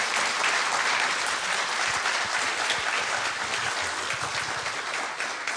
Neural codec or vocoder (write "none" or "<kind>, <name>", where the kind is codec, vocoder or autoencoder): none